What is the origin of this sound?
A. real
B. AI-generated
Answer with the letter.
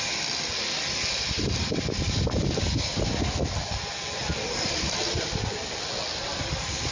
A